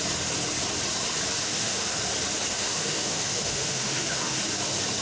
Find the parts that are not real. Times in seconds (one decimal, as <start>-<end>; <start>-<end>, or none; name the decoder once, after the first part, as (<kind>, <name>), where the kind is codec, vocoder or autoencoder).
1.4-2.0 (autoencoder, DAC-VAE); 2.5-4.4